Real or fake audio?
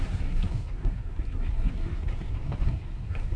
fake